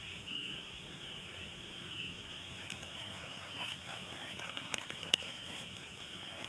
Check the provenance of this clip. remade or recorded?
remade